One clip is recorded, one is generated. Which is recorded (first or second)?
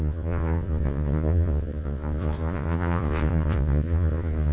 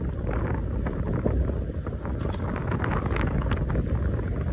second